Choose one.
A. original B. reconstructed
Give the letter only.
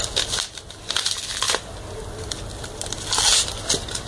A